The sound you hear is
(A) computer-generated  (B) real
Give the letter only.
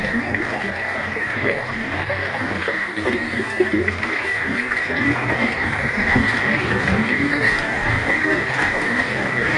A